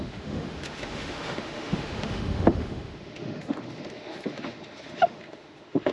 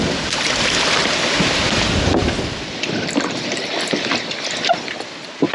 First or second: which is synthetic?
first